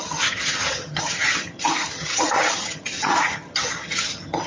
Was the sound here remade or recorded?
remade